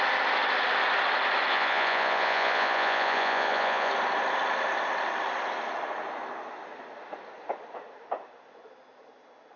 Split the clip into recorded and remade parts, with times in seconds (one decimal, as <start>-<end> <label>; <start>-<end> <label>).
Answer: 0.0-1.5 recorded; 1.5-3.9 remade; 3.9-9.6 recorded